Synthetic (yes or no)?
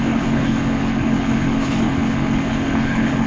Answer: yes